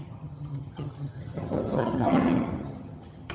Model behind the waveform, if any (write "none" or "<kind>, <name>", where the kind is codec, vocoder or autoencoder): vocoder, HiFi-GAN